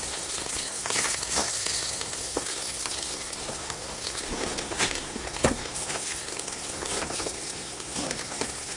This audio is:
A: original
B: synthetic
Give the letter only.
B